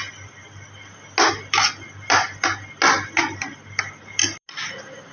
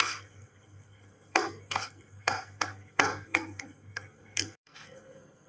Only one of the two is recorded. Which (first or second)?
first